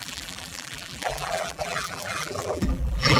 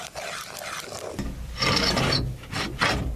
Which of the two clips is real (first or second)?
second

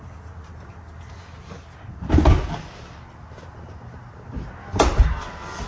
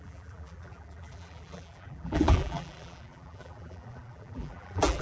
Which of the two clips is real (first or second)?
first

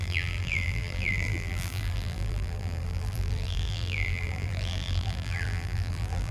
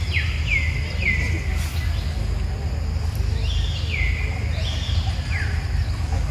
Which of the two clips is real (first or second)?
second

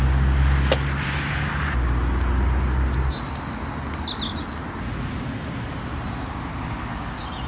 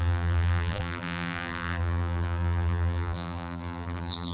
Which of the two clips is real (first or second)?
first